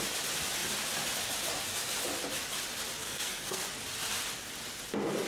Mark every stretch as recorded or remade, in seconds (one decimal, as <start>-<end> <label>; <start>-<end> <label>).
0.0-3.0 recorded; 3.0-3.7 remade; 3.7-5.3 recorded